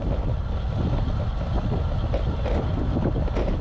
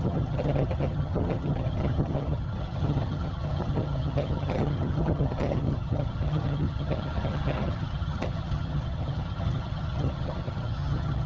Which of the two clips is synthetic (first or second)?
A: second